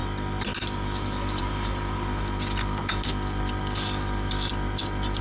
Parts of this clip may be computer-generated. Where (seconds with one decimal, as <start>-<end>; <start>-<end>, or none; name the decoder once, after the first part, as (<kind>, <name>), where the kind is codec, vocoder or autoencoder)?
none